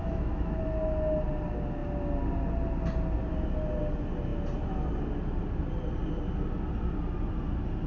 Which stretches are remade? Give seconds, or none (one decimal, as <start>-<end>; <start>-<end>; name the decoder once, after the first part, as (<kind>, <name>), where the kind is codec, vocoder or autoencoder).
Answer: 0.0-0.6 (autoencoder, DAC-VAE)